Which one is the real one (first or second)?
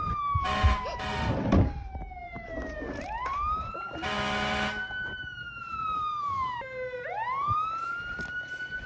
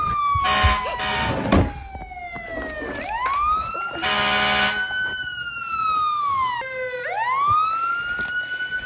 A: second